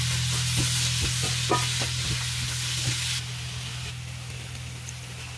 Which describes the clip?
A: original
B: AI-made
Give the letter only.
A